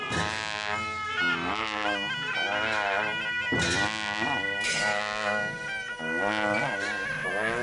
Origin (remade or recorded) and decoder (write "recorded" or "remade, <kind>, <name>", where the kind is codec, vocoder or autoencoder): recorded